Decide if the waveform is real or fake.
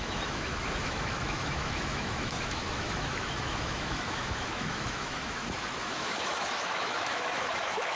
fake